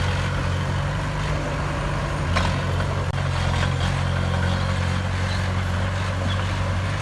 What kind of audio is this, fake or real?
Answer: real